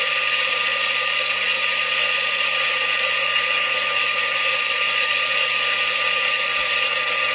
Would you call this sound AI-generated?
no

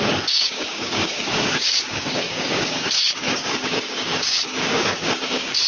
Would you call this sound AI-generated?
yes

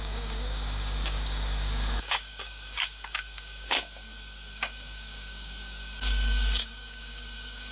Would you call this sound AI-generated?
yes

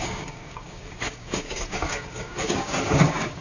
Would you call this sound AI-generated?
yes